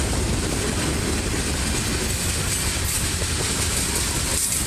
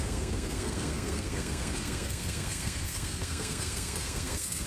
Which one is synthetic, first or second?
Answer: second